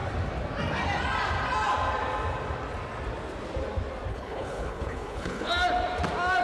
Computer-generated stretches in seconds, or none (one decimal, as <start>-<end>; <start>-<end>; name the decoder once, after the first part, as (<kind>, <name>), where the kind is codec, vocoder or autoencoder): 4.1-5.5 (codec, HILCodec)